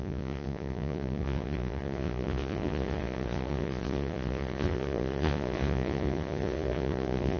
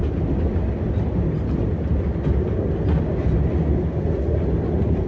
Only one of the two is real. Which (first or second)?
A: second